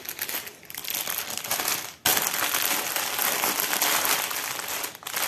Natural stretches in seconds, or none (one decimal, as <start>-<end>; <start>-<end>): 0.0-0.8; 1.6-5.3